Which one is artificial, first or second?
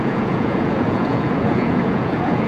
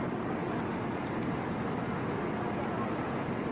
first